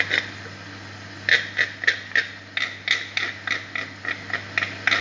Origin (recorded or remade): recorded